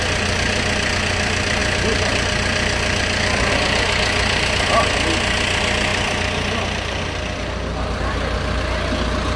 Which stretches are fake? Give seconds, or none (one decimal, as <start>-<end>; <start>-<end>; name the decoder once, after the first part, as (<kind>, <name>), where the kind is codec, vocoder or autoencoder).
none